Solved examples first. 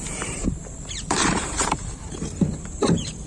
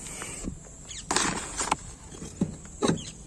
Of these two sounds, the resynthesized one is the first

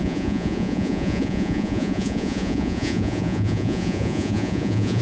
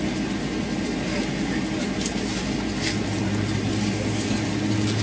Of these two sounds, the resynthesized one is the first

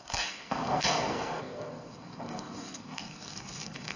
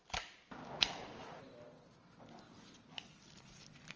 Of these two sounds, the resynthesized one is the first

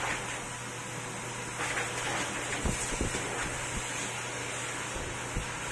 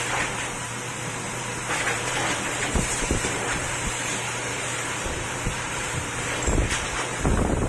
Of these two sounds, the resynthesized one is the second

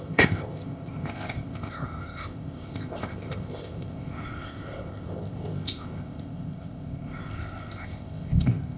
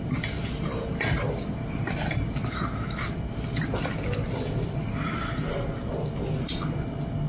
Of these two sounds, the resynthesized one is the first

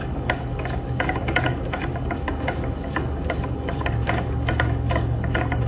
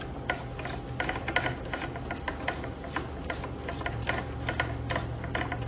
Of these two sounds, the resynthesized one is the first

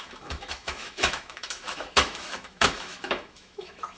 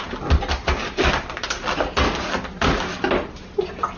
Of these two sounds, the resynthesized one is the first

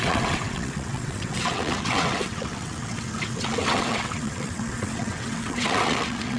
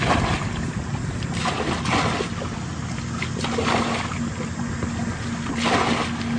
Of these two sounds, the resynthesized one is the first